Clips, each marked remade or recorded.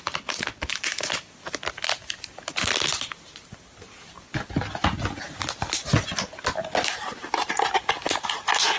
recorded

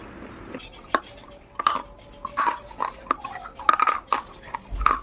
recorded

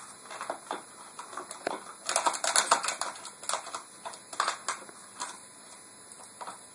recorded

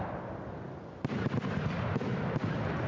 recorded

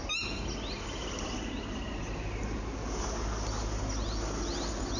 recorded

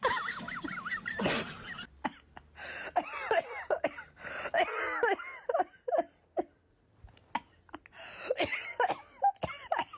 recorded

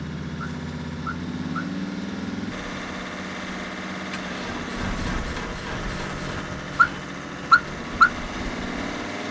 recorded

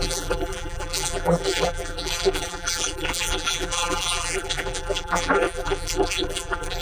remade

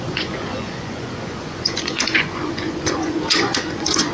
remade